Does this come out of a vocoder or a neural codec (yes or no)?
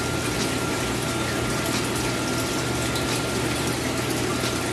no